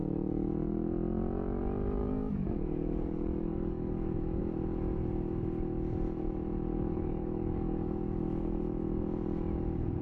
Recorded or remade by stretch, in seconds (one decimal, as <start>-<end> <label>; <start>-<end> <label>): 0.0-2.0 recorded; 2.0-4.4 remade; 4.4-6.7 recorded; 6.7-8.2 remade; 8.2-10.0 recorded